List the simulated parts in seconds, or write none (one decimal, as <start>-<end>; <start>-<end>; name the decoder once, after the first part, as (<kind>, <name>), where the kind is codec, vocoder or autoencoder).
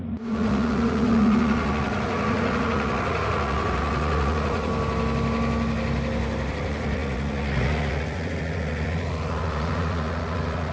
0.0-4.7 (vocoder, Vocos); 6.5-10.7